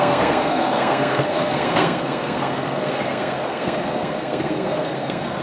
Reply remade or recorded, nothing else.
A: remade